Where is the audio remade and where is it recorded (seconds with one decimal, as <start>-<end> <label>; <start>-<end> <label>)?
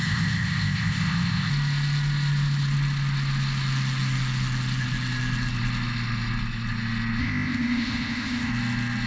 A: 0.0-1.5 remade; 1.5-7.2 recorded; 7.2-8.5 remade; 8.5-9.1 recorded